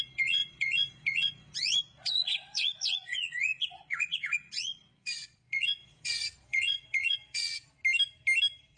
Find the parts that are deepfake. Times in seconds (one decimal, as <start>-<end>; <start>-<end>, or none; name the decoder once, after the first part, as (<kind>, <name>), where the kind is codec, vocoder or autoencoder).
0.0-7.8 (vocoder, Vocos)